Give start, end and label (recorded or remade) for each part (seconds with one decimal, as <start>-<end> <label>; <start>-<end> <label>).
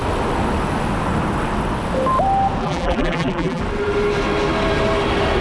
0.0-2.6 recorded; 2.6-3.6 remade; 3.6-5.4 recorded